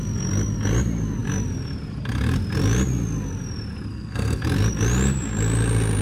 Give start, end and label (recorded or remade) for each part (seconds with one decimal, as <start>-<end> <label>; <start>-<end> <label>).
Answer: 0.0-3.9 recorded; 3.9-4.4 remade; 4.4-6.0 recorded